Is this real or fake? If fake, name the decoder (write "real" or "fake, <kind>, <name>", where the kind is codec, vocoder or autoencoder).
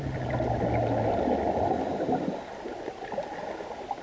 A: real